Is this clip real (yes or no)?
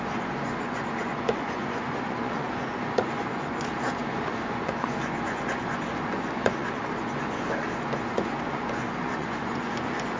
no